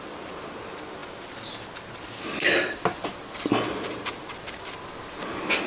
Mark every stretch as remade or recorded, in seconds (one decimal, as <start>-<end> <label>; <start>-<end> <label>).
0.0-5.7 recorded